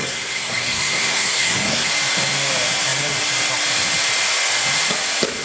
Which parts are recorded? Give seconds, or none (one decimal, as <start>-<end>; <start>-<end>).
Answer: 1.9-5.4